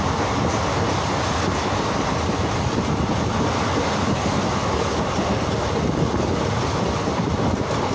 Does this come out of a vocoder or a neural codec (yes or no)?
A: no